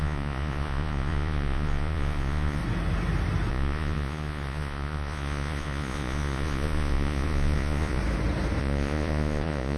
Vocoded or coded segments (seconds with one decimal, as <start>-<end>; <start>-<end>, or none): 0.0-2.6; 3.5-8.0; 8.6-9.8